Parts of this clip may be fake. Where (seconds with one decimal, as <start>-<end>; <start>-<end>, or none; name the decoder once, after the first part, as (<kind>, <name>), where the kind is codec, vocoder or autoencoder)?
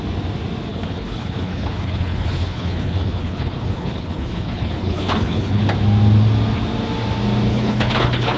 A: 0.7-5.6 (codec, HILCodec); 7.5-8.4